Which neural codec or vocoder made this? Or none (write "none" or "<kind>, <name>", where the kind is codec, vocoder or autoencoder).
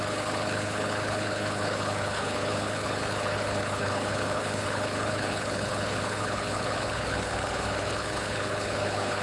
codec, HILCodec